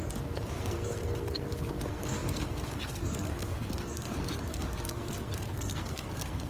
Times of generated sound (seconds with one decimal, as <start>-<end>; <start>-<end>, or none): 0.0-6.5